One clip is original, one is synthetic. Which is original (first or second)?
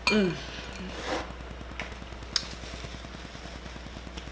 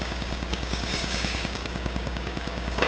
first